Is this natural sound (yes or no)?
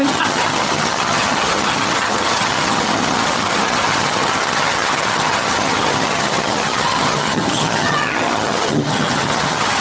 no